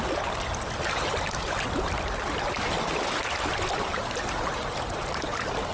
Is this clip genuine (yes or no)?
yes